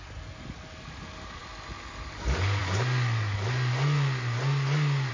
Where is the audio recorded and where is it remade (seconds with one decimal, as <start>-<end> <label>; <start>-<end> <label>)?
0.0-5.1 recorded